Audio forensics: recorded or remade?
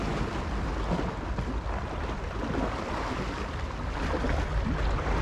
recorded